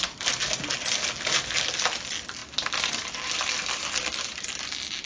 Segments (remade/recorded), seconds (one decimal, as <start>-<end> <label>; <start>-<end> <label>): 0.0-5.1 recorded